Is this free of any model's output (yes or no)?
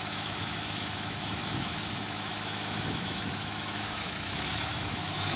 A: no